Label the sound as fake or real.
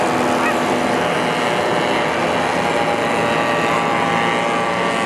real